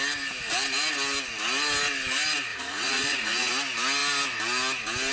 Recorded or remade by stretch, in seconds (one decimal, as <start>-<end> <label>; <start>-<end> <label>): 0.0-2.5 recorded; 2.5-3.5 remade; 3.5-5.1 recorded